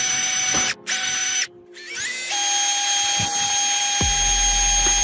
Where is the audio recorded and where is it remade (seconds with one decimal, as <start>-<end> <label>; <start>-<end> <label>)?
0.0-5.0 recorded